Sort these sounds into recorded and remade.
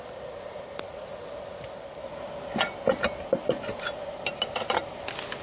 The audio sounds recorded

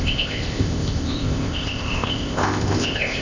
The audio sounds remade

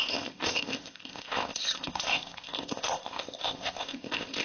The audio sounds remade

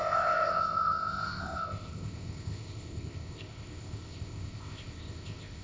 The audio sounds remade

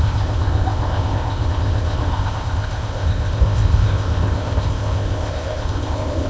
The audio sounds remade